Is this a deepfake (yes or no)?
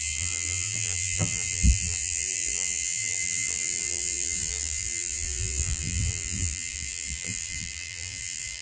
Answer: yes